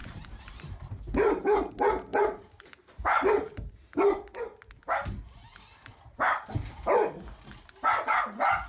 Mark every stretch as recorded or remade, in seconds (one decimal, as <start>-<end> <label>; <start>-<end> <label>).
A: 0.0-1.7 remade; 1.7-2.1 recorded; 2.1-4.3 remade; 4.3-5.7 recorded; 5.7-6.5 remade; 6.5-8.7 recorded